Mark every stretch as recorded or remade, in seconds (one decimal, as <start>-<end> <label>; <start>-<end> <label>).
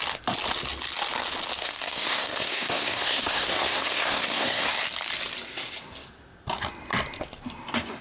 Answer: 0.0-1.6 recorded; 1.6-4.7 remade; 4.7-8.0 recorded